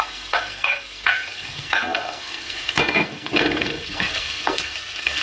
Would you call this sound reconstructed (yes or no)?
yes